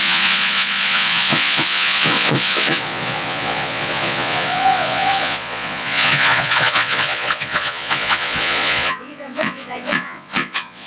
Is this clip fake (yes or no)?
yes